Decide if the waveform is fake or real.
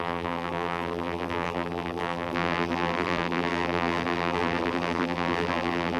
fake